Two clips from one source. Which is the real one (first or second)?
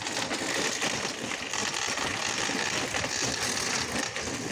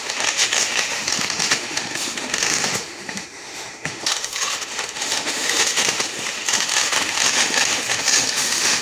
first